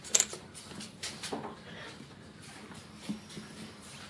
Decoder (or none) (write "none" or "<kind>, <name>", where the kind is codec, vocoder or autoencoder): none